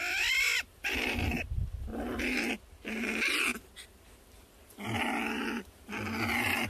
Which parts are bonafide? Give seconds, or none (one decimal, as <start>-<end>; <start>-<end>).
0.0-6.7